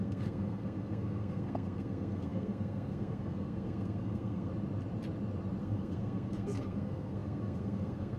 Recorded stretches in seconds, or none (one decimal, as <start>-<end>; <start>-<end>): 4.5-5.6